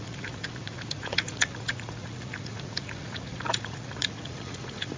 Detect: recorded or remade remade